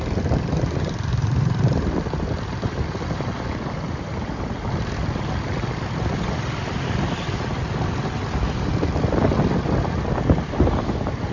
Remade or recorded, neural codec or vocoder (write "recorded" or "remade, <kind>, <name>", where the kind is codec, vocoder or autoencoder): remade, vocoder, BigVGAN v2